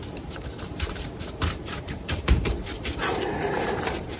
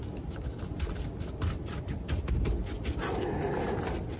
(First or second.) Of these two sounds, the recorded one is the second